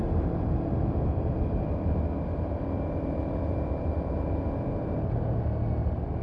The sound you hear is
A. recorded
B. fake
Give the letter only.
A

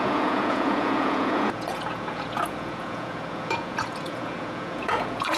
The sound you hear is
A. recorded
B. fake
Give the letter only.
B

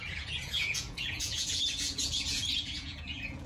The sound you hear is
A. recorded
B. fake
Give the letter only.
B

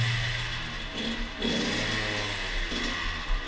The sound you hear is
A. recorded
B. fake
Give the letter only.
A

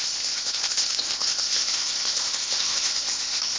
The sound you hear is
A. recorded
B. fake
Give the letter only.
B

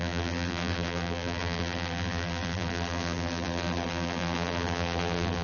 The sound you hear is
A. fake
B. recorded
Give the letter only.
A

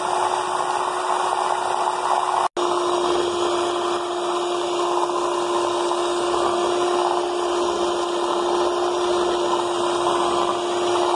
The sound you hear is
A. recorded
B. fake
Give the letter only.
A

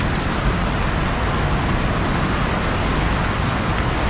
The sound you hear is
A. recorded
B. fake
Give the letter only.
A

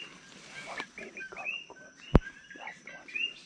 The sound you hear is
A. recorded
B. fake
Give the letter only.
A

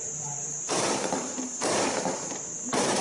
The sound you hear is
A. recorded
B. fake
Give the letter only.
B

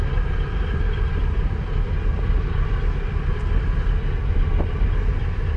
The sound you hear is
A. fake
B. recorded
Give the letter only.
B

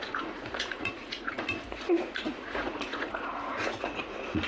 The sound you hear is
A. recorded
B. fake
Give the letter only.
B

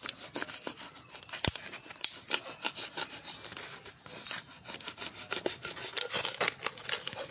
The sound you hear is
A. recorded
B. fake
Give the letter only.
A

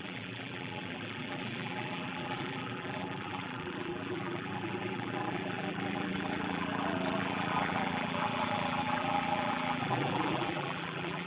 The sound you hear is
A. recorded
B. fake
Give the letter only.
B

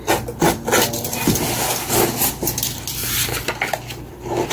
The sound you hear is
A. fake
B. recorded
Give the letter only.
B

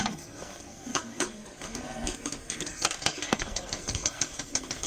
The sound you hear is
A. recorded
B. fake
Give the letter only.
B